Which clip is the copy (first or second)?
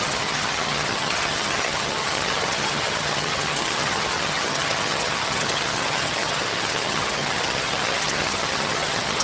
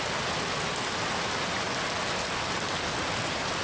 first